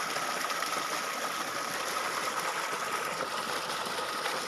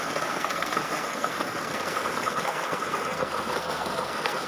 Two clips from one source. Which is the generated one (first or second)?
second